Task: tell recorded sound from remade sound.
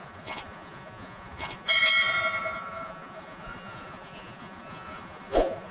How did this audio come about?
remade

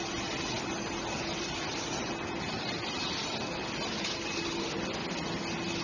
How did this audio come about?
recorded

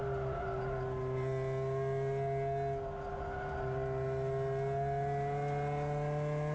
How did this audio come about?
recorded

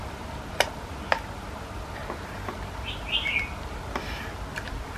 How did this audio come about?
recorded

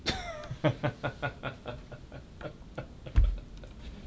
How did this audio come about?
recorded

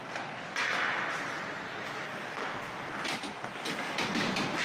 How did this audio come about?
recorded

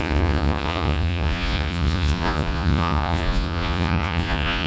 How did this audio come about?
remade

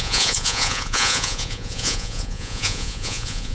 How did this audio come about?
remade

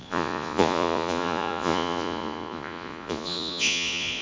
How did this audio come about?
remade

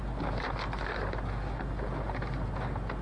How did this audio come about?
recorded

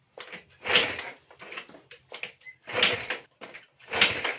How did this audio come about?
recorded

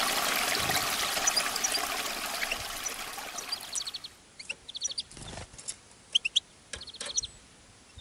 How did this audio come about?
recorded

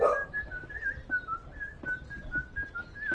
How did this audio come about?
recorded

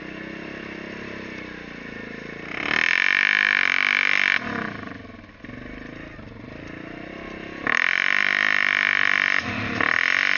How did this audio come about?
recorded